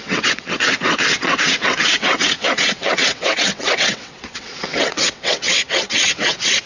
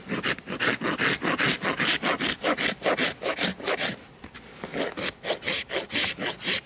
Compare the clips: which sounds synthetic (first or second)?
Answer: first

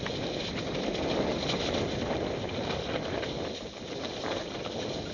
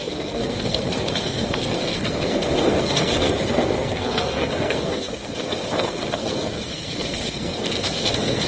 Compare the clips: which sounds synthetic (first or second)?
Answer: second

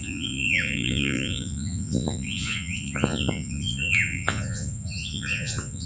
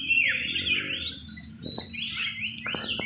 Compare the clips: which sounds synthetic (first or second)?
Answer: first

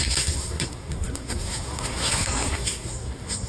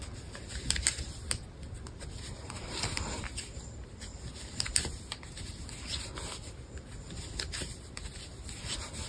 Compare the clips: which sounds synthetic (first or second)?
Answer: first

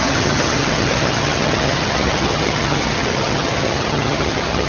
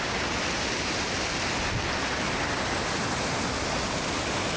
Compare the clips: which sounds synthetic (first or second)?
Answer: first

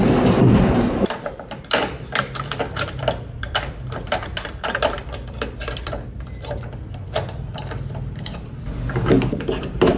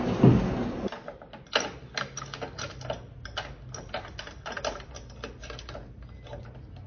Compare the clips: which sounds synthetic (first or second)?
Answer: first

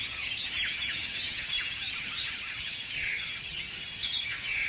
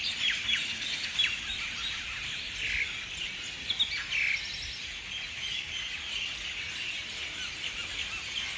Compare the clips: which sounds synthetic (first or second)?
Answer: first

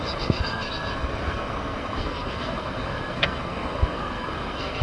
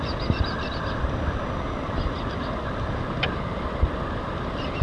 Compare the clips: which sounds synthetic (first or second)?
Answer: first